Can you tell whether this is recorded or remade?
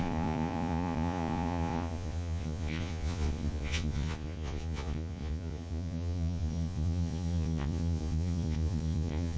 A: remade